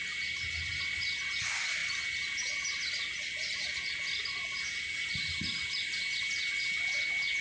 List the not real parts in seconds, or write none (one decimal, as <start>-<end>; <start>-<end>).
none